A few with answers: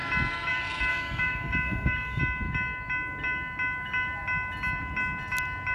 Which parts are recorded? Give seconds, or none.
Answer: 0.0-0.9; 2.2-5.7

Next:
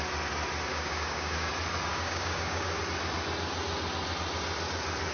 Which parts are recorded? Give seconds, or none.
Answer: 0.0-0.7; 1.5-1.9; 2.8-5.1

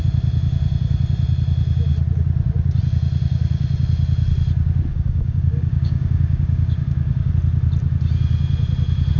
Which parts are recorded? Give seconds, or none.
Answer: 0.0-4.9; 7.3-9.2

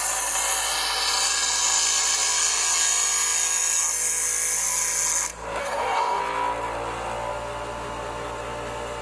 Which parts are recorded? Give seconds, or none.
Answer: 0.0-5.6; 6.2-9.0

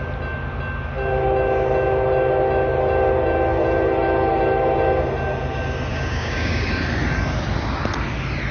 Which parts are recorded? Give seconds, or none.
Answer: 0.0-5.9; 6.7-8.5

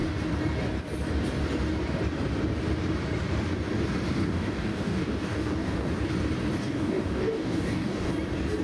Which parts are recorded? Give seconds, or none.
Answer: 0.0-4.2; 5.9-6.6; 8.1-8.6

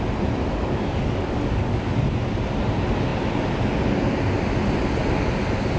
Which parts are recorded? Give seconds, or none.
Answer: 0.0-0.4; 1.9-5.8

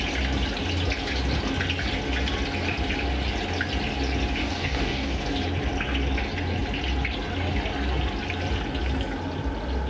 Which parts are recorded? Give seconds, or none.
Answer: 0.0-4.4; 5.2-9.9